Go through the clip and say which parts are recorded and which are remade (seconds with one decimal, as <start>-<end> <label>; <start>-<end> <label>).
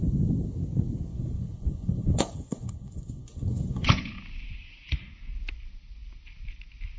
0.0-1.1 recorded; 1.1-4.2 remade; 4.2-7.0 recorded